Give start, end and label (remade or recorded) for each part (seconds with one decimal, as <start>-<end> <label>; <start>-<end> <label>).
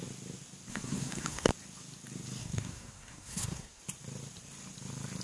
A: 0.0-0.7 recorded; 0.7-1.5 remade; 1.5-2.4 recorded; 2.4-3.8 remade; 3.8-5.2 recorded